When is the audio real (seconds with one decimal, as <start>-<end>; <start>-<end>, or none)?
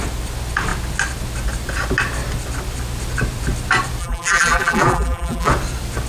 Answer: 0.0-4.0; 5.5-6.1